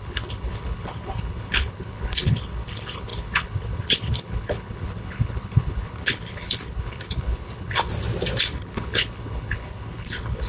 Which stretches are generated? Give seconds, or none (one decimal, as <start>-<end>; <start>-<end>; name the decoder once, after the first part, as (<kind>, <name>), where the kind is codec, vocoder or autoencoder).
0.0-7.9 (codec, HILCodec); 8.4-10.5